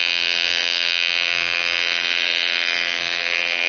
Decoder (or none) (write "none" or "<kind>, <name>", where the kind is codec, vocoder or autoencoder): vocoder, BigVGAN v2